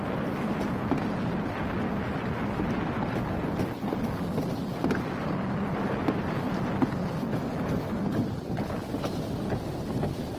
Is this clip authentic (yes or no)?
yes